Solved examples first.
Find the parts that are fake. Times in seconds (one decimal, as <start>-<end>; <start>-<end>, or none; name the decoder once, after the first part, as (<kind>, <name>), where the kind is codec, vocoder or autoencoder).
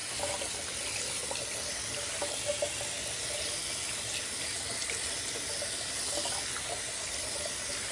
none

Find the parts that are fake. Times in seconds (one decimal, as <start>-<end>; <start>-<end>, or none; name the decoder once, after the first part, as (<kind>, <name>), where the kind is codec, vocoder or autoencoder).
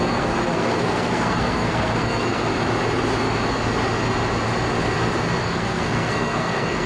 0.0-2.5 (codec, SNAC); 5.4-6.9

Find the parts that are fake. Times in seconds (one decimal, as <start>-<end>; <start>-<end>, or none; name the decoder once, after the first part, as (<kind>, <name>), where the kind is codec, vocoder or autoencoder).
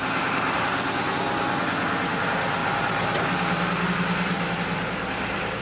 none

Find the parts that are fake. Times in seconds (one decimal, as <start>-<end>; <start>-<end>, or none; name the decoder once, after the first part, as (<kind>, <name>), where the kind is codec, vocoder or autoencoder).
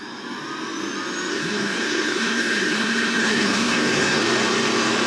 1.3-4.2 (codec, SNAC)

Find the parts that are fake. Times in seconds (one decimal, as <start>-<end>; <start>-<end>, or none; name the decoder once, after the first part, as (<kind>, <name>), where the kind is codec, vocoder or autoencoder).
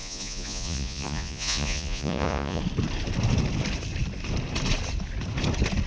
0.0-2.6 (vocoder, Vocos)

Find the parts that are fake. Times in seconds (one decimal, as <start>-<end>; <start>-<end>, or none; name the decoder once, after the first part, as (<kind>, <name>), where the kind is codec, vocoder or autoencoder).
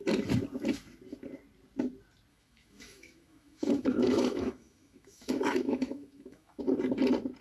2.3-6.6 (autoencoder, DAC-VAE)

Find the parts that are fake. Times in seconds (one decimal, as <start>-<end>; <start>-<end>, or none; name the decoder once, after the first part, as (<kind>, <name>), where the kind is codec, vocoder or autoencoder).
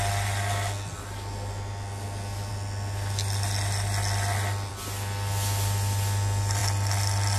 none